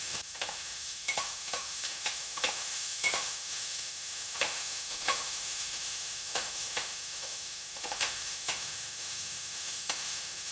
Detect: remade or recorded remade